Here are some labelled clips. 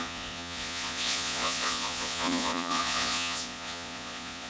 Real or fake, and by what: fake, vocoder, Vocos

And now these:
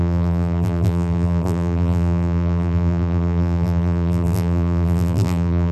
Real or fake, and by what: fake, vocoder, BigVGAN v2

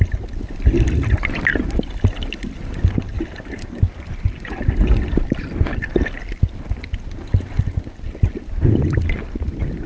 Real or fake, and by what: real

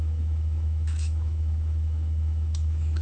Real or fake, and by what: fake, autoencoder, DAC-VAE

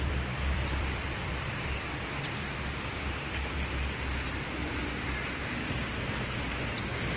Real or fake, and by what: fake, vocoder, BigVGAN v2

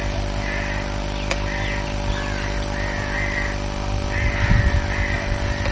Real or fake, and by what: real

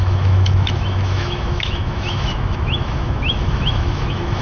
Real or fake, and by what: fake, autoencoder, DAC-VAE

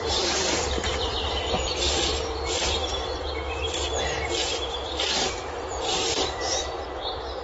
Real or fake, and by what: fake, vocoder, BigVGAN v2